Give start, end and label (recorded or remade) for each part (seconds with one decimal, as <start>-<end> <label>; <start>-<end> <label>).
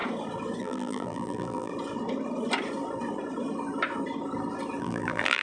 0.0-0.6 recorded; 0.6-1.7 remade; 1.7-4.8 recorded; 4.8-5.4 remade